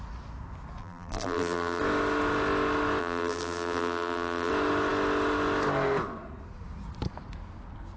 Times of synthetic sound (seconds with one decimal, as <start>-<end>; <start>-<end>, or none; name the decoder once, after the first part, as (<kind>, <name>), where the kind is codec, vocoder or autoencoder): 0.8-1.8 (vocoder, BigVGAN v2); 3.0-4.5